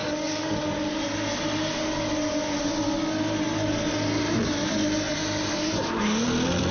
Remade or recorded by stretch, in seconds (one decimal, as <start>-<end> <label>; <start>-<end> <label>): 0.0-0.6 remade; 0.6-6.7 recorded